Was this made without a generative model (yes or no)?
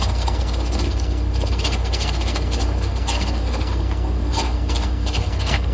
no